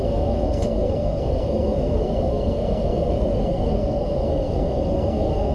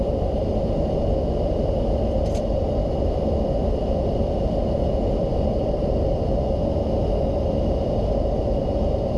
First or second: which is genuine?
second